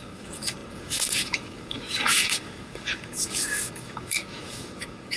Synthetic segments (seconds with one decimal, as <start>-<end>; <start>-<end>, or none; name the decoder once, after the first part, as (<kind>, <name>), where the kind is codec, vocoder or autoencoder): 0.0-5.2 (codec, DAC)